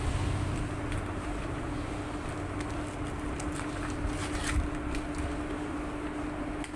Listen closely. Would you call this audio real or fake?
real